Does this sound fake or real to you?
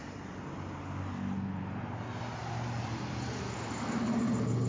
real